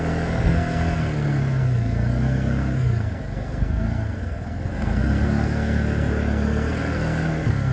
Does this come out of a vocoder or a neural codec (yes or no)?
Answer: yes